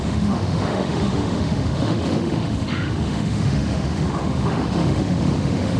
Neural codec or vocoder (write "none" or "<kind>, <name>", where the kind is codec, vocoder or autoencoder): autoencoder, DAC-VAE